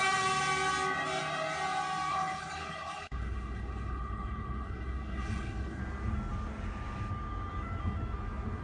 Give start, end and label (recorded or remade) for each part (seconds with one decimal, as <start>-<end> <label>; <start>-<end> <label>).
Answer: 0.0-2.1 recorded; 2.1-5.8 remade; 5.8-8.6 recorded